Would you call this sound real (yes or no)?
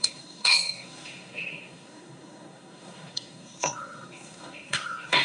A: no